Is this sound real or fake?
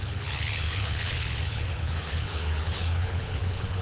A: fake